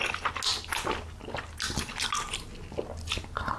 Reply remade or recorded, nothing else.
recorded